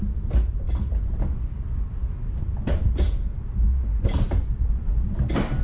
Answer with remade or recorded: recorded